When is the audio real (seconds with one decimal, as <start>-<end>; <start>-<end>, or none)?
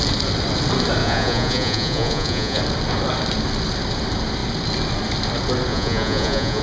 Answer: 0.0-1.0; 2.6-5.7